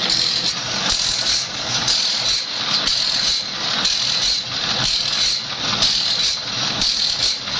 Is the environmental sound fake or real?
real